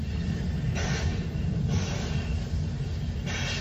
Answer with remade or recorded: recorded